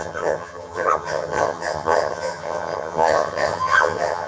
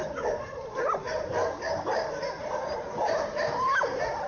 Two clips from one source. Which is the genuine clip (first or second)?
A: second